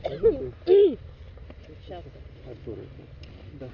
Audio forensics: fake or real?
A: real